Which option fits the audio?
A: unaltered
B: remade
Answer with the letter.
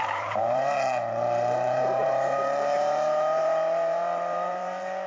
B